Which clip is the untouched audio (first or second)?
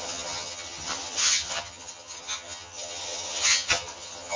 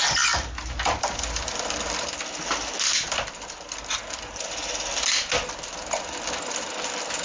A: second